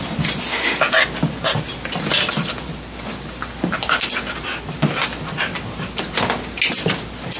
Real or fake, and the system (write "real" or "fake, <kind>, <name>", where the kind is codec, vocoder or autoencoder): real